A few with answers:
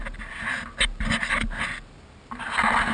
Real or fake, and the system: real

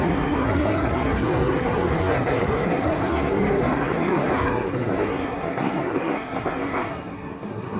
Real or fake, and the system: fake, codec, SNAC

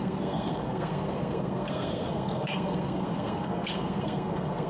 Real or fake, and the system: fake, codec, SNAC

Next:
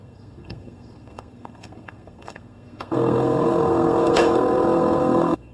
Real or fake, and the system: fake, codec, SNAC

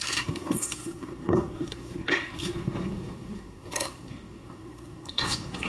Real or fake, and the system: fake, codec, SNAC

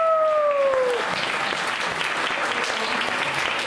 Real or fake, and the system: real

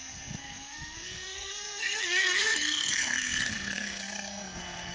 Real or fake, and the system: fake, codec, SNAC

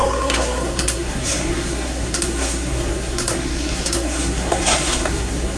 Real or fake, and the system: fake, codec, SNAC